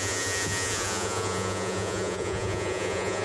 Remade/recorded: remade